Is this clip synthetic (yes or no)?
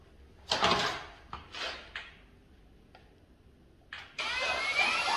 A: no